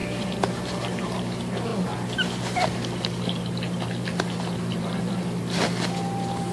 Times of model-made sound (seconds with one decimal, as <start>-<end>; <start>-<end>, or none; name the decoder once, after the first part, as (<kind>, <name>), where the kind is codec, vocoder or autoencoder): 0.0-6.5 (vocoder, BigVGAN v2)